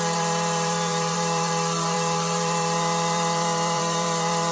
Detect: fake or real fake